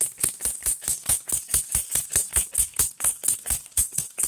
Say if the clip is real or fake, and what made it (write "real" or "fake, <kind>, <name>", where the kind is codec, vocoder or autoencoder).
fake, codec, DAC